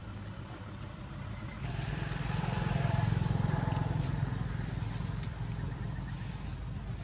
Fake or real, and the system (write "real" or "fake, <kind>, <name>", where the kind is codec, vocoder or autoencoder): real